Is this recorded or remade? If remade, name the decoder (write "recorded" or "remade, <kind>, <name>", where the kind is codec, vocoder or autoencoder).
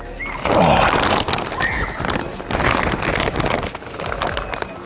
recorded